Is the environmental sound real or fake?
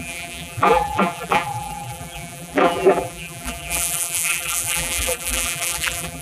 fake